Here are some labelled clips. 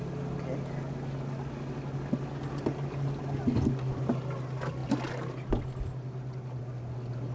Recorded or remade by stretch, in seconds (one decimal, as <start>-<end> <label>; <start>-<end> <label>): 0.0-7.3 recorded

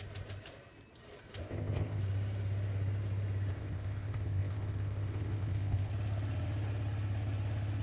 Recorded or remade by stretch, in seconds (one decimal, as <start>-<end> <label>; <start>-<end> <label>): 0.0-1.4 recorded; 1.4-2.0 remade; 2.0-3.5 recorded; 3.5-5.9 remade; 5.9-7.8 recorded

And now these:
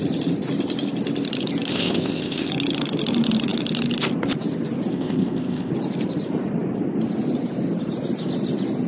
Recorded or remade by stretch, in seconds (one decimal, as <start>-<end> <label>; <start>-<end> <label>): 0.0-1.7 recorded; 1.7-2.5 remade; 2.5-4.9 recorded; 4.9-5.7 remade; 5.7-8.9 recorded

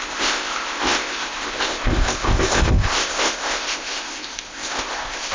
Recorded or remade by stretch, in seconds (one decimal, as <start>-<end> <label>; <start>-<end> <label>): 0.0-5.3 remade